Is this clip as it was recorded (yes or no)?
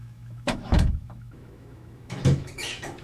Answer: no